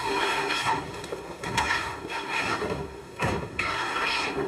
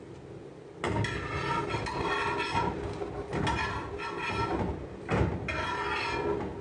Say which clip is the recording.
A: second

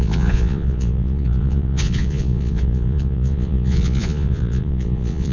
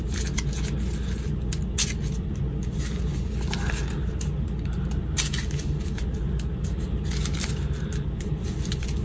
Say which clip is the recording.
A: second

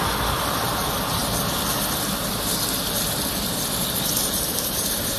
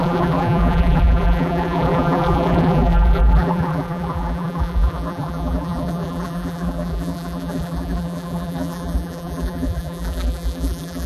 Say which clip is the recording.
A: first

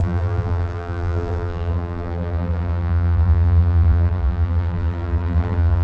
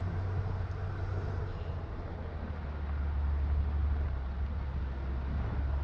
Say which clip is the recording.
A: second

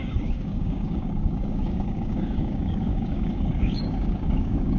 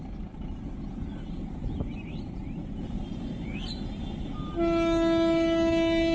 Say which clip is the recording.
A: second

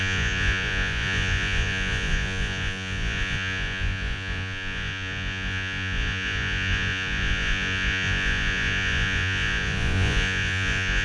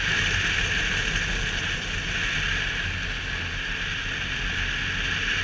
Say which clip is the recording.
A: second